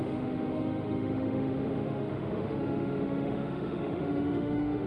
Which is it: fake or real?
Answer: fake